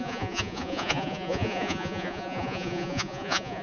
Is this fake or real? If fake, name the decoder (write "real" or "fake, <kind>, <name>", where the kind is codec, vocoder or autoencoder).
fake, vocoder, Vocos